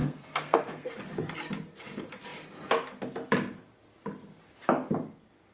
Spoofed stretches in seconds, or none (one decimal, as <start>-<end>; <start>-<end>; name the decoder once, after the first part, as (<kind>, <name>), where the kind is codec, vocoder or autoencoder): 0.0-0.9 (codec, SNAC)